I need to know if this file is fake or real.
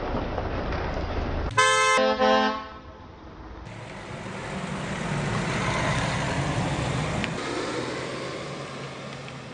real